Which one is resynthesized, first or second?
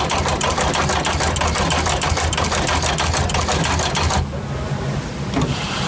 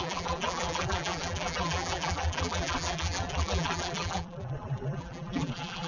second